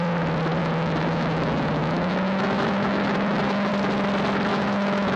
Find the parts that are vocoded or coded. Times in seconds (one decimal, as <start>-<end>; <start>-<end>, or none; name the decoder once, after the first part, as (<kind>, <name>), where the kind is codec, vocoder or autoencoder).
0.6-3.7 (autoencoder, DAC-VAE); 4.5-5.2